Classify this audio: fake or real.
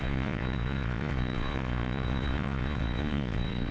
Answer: fake